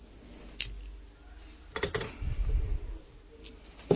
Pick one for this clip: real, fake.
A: real